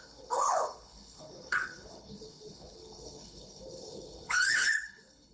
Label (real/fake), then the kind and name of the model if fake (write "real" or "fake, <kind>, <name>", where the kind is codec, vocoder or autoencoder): fake, codec, HILCodec